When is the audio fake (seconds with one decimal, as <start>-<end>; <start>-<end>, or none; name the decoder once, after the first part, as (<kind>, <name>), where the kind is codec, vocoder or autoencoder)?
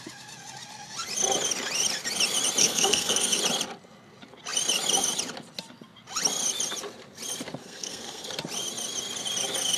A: 2.6-3.4 (codec, SNAC); 7.6-8.3